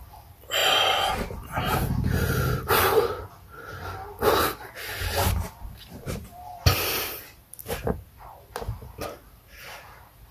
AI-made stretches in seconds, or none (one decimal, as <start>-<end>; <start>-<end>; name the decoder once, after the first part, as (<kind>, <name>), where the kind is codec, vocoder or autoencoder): none